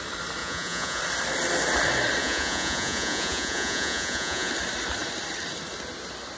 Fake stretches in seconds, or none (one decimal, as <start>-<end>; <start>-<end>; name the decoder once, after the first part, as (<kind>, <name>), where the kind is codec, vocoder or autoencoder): 0.4-1.0 (vocoder, Vocos); 2.2-4.5